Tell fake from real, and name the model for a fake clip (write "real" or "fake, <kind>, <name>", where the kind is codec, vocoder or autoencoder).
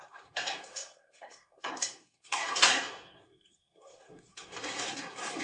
fake, codec, SNAC